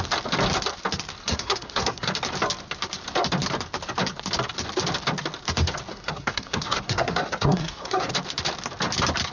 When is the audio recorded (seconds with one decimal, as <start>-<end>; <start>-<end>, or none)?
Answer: 0.0-1.2; 2.1-5.9; 8.1-9.3

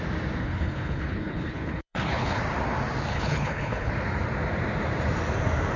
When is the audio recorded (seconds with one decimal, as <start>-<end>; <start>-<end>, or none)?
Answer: 0.0-0.4; 2.4-3.1; 3.9-5.8